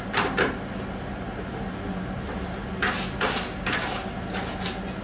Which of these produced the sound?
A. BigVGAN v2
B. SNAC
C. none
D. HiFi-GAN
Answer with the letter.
C